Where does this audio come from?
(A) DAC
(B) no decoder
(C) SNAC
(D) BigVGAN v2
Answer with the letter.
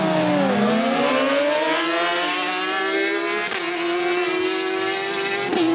B